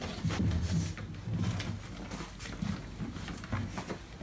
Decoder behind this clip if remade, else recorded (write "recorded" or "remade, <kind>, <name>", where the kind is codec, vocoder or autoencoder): recorded